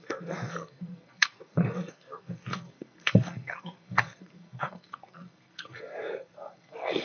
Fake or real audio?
fake